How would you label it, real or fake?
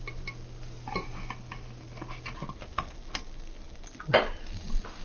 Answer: real